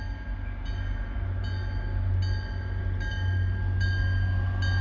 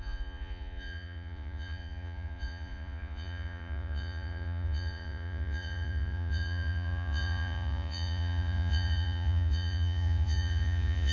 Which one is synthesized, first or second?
second